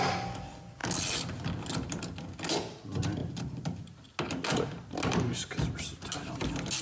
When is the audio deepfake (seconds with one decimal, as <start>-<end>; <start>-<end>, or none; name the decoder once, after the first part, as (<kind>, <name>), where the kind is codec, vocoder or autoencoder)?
none